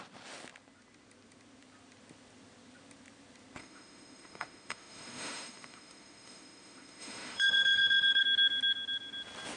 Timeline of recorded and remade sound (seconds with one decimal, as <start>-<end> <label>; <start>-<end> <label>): 0.0-3.6 recorded; 3.6-8.2 remade; 8.2-9.6 recorded